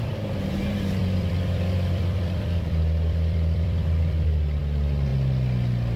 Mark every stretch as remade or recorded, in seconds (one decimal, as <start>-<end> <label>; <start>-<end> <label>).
0.0-1.0 recorded; 1.0-4.6 remade; 4.6-6.0 recorded